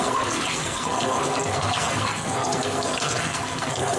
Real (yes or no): no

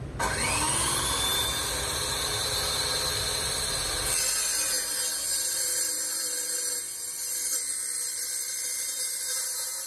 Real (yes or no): yes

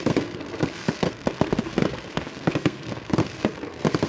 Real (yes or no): no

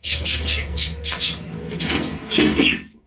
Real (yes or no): no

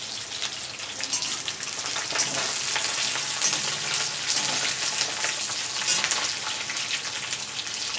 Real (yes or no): yes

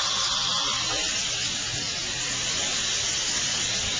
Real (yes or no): yes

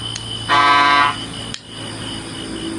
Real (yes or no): yes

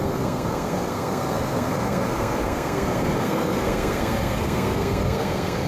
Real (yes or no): no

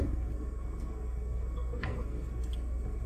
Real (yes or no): no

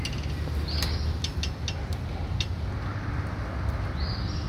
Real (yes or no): yes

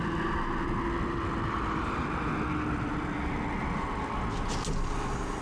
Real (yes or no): yes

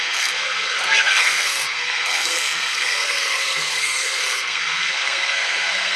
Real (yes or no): no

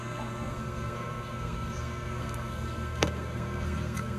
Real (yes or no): no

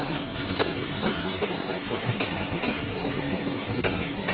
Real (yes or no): no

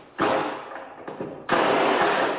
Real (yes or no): yes